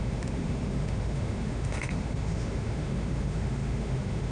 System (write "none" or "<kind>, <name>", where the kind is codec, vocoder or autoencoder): autoencoder, DAC-VAE